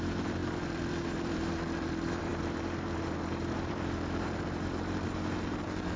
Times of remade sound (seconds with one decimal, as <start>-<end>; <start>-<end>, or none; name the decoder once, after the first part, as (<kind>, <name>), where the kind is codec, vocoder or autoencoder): 0.0-6.0 (vocoder, BigVGAN v2)